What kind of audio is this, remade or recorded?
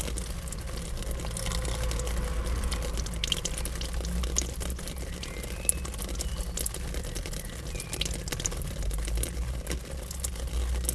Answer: recorded